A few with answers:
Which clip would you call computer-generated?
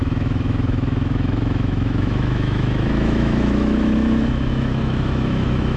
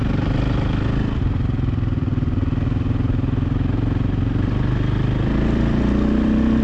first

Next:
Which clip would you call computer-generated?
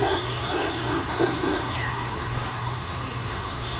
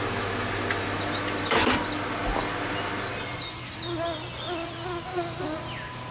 first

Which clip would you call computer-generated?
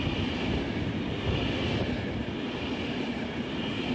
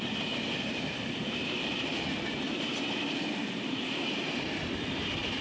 second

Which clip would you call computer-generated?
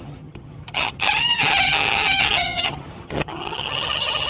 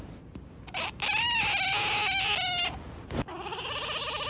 first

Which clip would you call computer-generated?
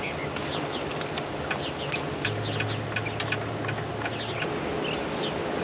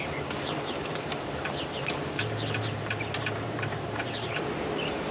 second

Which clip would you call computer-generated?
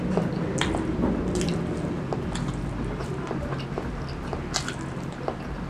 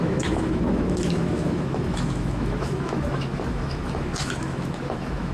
second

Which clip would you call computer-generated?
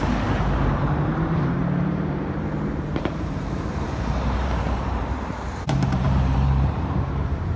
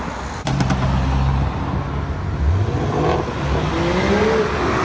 first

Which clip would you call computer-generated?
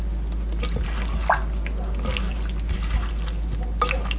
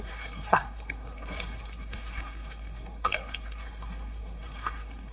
second